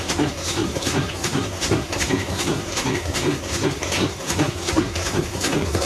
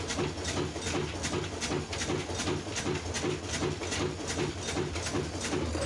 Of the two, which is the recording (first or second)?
second